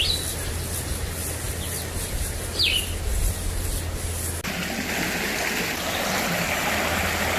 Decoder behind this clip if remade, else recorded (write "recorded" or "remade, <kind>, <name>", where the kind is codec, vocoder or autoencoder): recorded